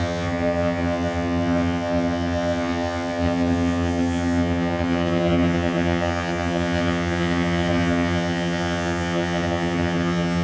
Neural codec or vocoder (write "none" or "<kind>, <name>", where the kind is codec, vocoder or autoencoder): vocoder, HiFi-GAN